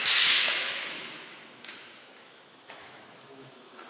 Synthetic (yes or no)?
yes